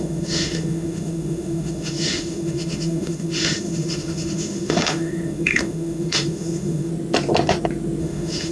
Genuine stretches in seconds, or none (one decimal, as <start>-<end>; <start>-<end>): 6.9-8.0

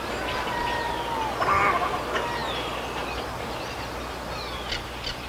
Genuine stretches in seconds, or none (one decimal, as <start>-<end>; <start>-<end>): 0.0-5.3

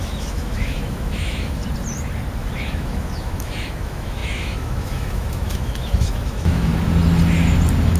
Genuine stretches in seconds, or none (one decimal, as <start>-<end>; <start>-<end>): 1.6-2.4; 6.7-8.0

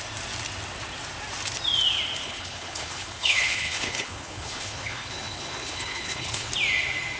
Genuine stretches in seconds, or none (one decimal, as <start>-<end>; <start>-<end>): 0.0-2.2; 6.5-7.2

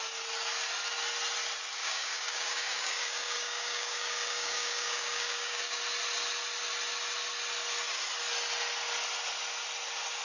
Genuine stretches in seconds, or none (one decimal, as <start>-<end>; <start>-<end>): 0.0-1.8; 5.8-10.2